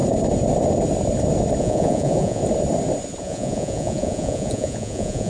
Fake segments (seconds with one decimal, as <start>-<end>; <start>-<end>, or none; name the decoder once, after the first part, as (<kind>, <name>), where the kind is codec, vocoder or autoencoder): 1.6-2.4 (vocoder, Vocos); 3.2-5.3